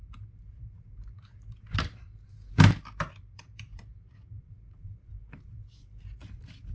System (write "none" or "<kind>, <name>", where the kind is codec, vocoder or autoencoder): vocoder, BigVGAN v2